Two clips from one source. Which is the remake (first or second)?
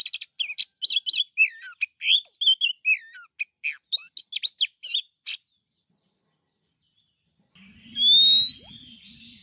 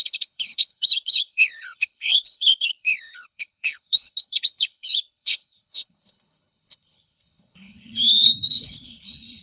second